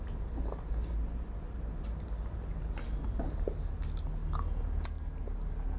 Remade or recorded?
recorded